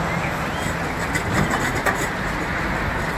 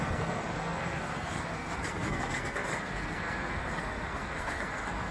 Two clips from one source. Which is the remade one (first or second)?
second